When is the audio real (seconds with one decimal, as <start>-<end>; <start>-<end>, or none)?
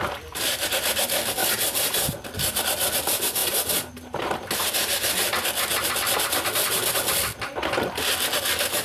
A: 0.0-8.8